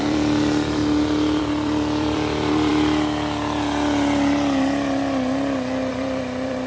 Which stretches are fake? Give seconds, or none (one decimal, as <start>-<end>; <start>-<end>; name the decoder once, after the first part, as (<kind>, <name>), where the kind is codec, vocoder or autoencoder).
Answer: 0.0-0.8 (vocoder, BigVGAN v2); 1.4-2.7; 5.9-6.7